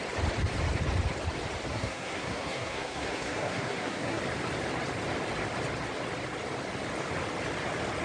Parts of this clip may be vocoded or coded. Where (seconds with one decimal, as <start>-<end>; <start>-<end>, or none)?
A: 1.7-4.2